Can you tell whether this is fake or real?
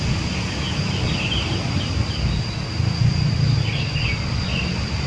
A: real